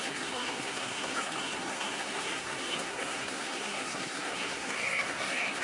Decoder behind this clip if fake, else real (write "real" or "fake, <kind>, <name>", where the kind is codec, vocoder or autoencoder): fake, codec, SNAC